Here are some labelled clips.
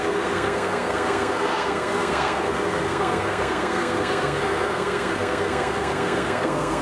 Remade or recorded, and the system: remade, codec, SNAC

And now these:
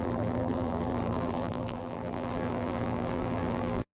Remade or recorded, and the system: remade, vocoder, BigVGAN v2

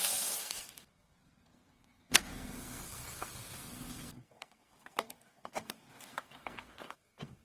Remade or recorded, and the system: remade, codec, SNAC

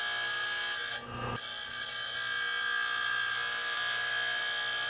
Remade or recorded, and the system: recorded